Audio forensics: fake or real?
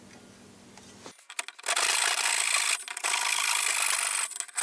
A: real